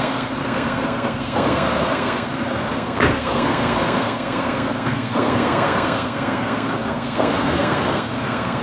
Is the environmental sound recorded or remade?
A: remade